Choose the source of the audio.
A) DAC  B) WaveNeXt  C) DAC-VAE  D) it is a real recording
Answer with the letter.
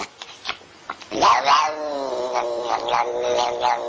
D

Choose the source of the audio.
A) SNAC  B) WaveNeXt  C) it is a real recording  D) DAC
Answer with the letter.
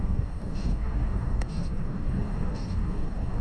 D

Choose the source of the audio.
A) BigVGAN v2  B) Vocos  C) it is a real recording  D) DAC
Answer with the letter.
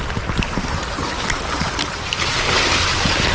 C